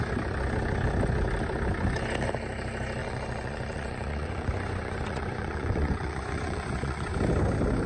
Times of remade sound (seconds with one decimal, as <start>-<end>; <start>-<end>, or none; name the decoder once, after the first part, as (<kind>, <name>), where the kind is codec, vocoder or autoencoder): 3.0-7.1 (vocoder, Vocos)